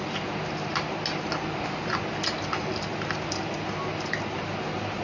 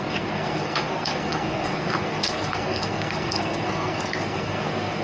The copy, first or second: second